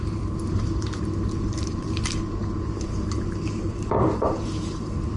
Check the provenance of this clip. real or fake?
fake